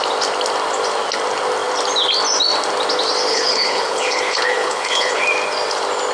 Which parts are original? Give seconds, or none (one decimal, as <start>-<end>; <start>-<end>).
0.0-3.3; 5.2-6.1